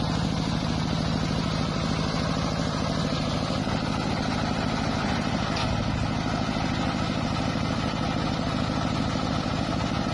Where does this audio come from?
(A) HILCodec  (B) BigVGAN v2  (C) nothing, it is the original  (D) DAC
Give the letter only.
C